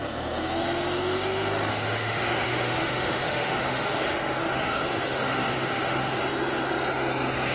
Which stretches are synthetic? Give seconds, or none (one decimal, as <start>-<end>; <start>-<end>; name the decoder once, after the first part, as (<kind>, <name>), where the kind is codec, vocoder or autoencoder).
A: 1.7-6.2 (autoencoder, DAC-VAE)